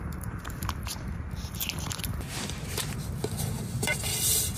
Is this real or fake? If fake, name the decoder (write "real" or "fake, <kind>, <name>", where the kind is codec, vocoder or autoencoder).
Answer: fake, vocoder, BigVGAN v2